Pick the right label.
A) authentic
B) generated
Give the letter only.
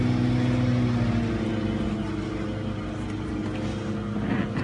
A